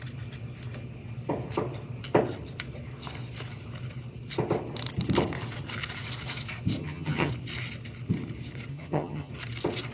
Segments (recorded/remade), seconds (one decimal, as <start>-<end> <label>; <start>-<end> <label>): 0.0-6.8 recorded; 6.8-7.3 remade; 7.3-8.7 recorded; 8.7-9.3 remade; 9.3-9.9 recorded